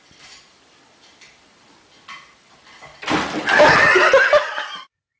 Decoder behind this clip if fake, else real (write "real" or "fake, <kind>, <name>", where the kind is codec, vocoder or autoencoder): real